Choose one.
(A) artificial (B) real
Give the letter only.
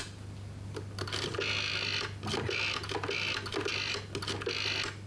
B